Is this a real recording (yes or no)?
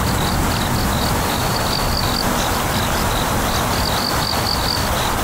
yes